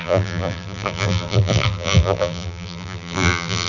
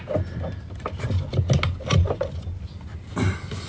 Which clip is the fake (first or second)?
first